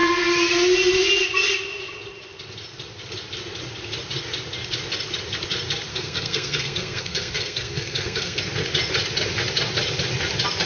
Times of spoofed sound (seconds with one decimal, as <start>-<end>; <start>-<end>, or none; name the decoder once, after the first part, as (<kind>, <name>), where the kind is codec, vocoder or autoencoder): 5.9-8.4 (codec, SNAC)